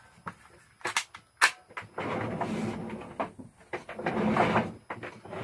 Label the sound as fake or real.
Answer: real